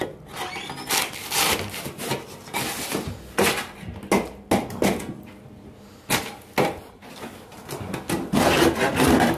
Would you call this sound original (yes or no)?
yes